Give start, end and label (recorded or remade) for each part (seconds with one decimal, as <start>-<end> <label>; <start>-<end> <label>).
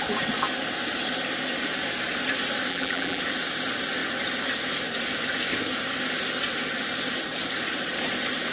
0.0-2.7 recorded; 2.7-3.2 remade; 3.2-8.5 recorded